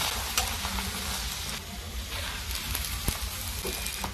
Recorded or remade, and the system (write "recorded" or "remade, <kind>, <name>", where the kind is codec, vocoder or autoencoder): recorded